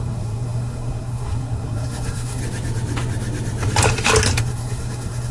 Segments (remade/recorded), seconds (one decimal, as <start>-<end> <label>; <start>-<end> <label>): 0.0-2.4 remade; 2.4-4.4 recorded; 4.4-5.3 remade